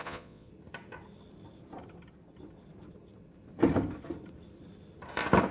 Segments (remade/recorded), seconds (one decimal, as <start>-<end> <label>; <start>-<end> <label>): 0.0-0.5 remade; 0.5-5.5 recorded